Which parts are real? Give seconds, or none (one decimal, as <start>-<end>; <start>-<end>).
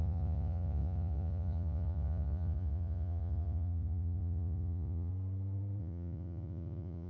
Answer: 5.1-5.8